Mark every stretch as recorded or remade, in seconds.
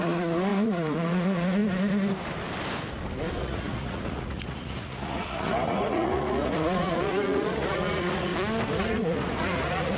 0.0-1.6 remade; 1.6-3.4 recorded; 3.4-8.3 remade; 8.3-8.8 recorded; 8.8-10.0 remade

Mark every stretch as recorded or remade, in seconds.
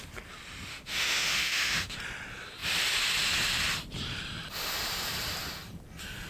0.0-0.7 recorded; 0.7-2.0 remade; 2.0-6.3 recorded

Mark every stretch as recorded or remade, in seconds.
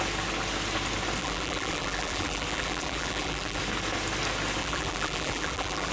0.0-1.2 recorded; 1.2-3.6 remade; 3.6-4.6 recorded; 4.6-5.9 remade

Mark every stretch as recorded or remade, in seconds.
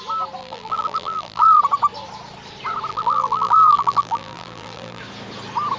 0.0-0.4 recorded; 0.4-1.6 remade; 1.6-2.9 recorded; 2.9-5.0 remade; 5.0-5.8 recorded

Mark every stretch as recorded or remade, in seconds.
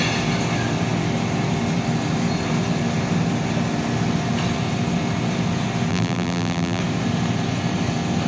0.0-5.9 recorded; 5.9-6.8 remade; 6.8-8.3 recorded